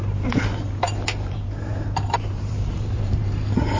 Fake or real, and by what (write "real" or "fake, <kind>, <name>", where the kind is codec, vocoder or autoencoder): fake, vocoder, BigVGAN v2